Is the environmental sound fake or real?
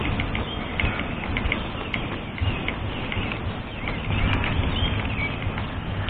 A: real